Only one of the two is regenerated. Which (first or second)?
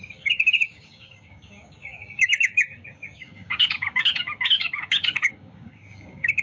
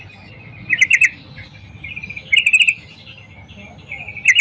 first